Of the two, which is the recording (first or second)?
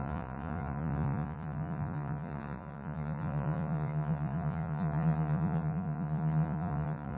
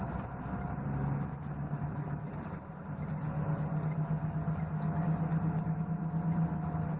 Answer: second